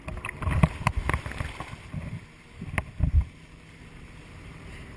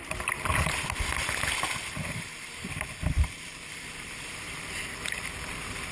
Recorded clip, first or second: first